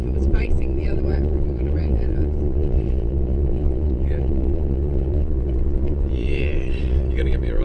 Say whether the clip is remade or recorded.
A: remade